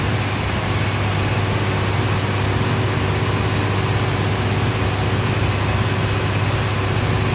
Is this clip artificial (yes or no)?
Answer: no